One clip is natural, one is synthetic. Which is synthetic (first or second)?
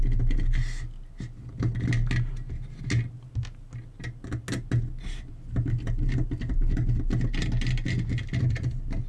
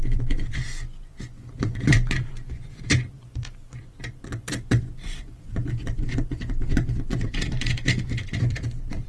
second